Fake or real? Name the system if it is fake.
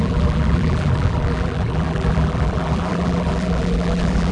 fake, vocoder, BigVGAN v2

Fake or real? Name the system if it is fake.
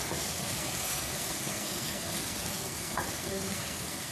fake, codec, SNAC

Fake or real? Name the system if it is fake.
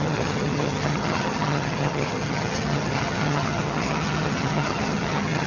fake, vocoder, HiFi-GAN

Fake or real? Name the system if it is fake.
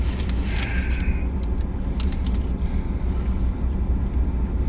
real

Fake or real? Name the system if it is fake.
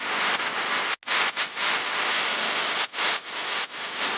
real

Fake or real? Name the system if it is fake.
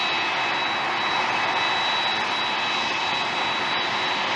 real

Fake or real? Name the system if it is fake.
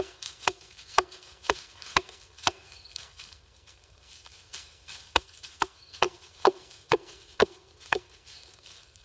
fake, codec, SNAC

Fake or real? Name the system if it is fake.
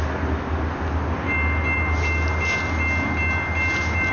real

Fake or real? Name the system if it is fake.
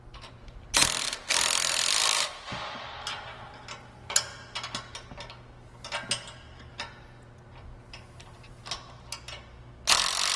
real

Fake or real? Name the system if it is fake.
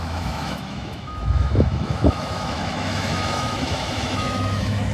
fake, autoencoder, DAC-VAE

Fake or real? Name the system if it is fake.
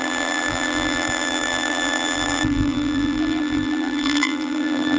fake, vocoder, BigVGAN v2